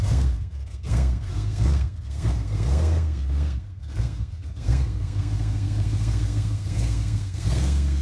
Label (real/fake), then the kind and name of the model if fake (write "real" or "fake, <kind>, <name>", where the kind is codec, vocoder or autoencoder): fake, codec, SNAC